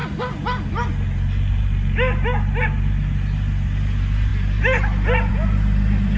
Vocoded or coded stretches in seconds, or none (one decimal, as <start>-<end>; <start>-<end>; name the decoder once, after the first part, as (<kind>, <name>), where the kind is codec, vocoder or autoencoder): none